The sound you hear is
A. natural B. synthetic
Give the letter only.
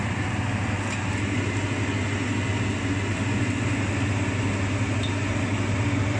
A